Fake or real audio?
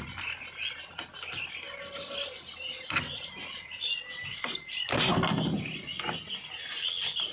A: real